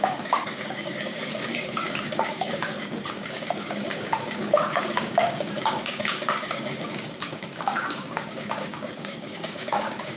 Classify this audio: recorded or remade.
remade